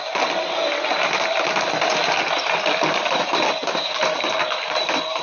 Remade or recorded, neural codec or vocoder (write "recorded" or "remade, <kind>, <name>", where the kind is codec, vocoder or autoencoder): recorded